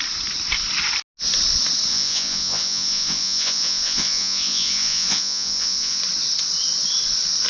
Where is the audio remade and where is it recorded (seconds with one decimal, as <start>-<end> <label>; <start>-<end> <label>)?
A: 0.0-1.9 recorded; 1.9-6.0 remade; 6.0-7.5 recorded